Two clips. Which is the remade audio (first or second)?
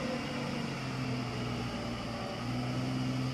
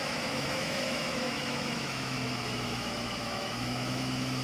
second